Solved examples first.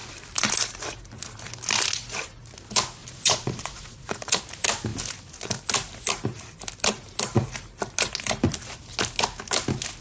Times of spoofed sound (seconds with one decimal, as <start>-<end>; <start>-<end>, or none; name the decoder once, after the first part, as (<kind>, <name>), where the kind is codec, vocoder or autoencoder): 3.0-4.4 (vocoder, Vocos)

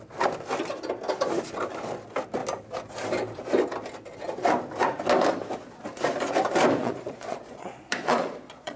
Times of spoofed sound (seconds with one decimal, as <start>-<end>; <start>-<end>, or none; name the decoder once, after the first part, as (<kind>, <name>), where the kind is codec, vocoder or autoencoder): 6.8-8.8 (vocoder, Vocos)

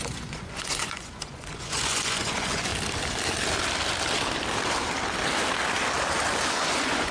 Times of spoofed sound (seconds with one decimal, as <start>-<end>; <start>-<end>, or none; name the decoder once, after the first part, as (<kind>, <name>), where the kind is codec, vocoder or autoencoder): 0.0-2.7 (vocoder, Vocos); 6.5-7.1